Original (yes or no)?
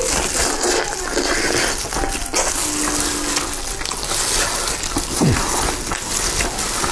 yes